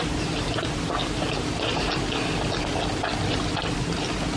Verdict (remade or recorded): recorded